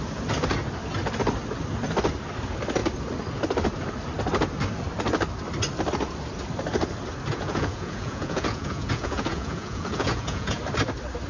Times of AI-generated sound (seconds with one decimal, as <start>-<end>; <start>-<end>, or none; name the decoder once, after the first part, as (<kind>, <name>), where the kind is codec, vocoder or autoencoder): 7.3-10.6 (vocoder, Vocos)